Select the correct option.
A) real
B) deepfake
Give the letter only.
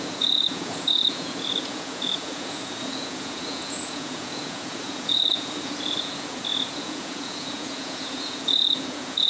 B